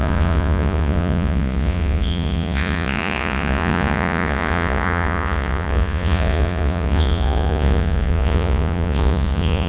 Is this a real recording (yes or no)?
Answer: no